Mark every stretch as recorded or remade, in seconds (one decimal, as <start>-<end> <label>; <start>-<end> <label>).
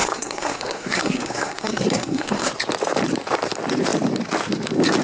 0.0-2.5 remade; 2.5-5.0 recorded